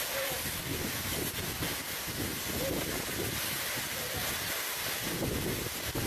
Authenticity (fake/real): real